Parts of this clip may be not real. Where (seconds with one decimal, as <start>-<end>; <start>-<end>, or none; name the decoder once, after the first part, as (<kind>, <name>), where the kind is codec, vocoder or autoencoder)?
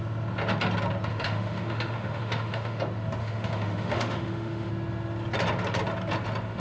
1.1-2.8 (autoencoder, DAC-VAE); 3.2-4.7